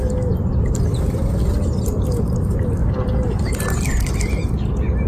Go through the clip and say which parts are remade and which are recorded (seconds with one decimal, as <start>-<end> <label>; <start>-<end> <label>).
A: 0.0-2.8 recorded; 2.8-3.5 remade; 3.5-5.1 recorded